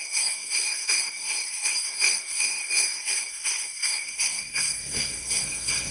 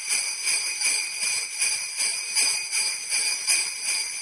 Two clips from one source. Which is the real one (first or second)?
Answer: second